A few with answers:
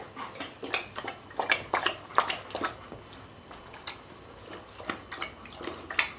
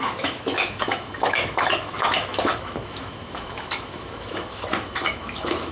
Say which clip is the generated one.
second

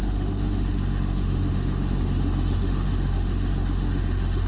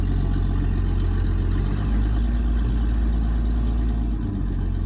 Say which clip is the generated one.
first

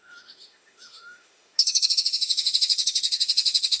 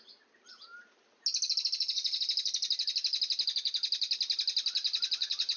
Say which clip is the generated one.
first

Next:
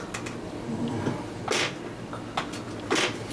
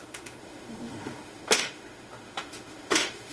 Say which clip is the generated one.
second